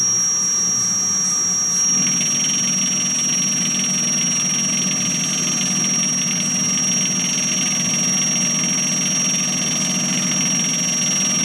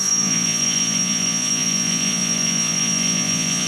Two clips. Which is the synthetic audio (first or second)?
second